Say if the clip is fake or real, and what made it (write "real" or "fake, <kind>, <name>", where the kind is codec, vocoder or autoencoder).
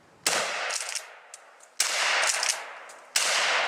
real